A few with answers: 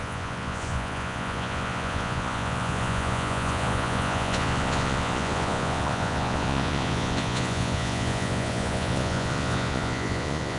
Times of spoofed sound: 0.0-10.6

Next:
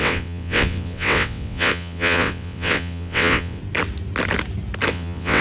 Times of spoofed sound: 0.0-3.6; 4.9-5.4

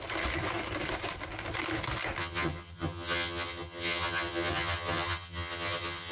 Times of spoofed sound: 2.2-6.1

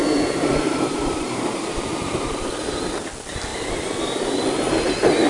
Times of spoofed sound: 0.5-2.5; 3.5-4.5

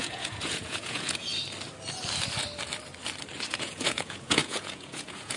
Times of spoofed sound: 0.0-1.3; 3.5-5.4

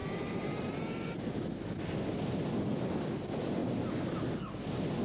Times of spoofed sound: none

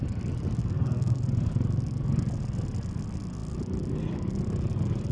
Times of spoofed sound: 0.6-1.2